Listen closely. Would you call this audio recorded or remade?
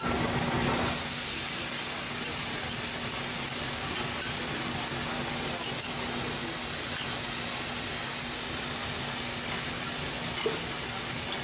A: recorded